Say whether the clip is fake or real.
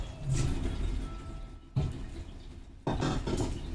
real